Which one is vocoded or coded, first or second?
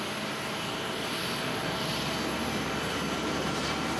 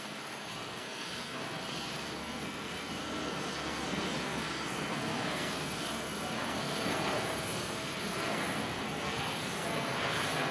second